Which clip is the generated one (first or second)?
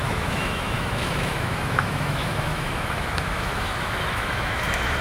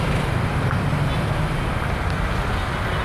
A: first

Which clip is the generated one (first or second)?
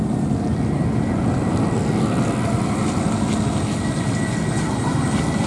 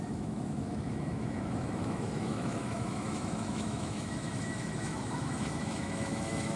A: second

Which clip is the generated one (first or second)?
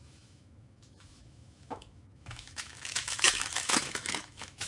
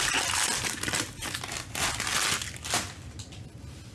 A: first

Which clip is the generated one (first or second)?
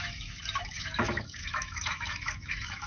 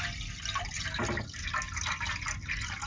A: first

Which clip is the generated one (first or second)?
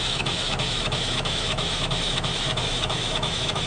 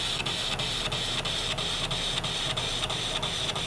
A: first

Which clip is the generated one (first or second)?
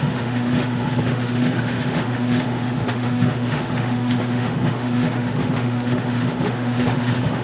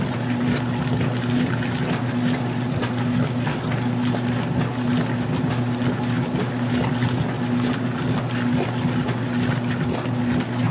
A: first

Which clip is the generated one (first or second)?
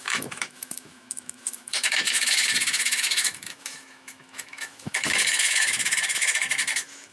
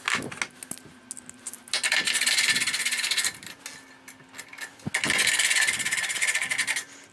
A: first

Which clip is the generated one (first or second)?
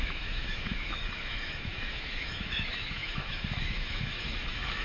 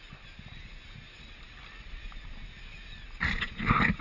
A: first